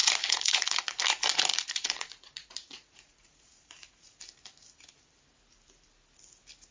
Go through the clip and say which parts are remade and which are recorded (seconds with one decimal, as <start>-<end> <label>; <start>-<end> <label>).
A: 0.0-1.0 remade; 1.0-1.5 recorded; 1.5-4.2 remade; 4.2-6.7 recorded